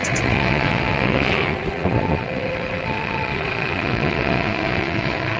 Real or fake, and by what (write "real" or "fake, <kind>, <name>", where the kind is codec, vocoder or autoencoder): fake, vocoder, WaveNeXt